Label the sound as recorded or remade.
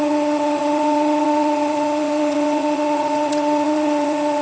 remade